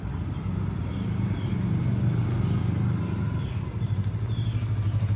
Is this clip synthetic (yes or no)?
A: no